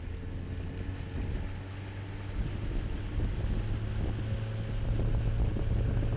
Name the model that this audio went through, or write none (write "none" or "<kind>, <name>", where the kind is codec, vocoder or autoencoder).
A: none